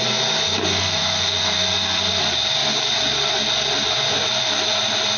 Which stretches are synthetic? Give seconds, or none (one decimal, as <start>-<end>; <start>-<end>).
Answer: 0.6-2.0